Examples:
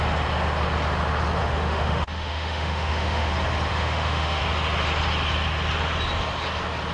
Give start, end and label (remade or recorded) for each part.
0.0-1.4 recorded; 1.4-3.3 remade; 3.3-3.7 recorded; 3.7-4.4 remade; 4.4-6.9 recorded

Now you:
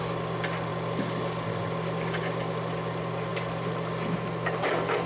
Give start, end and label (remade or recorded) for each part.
0.0-5.1 recorded

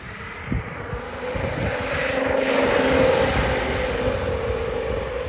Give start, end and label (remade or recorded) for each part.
0.0-5.3 recorded

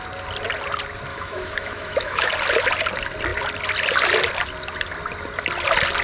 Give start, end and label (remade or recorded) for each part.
0.0-1.1 recorded; 1.1-2.3 remade; 2.3-6.0 recorded

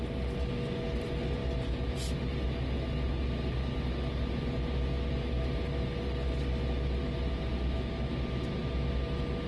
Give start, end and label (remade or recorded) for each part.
0.0-9.5 recorded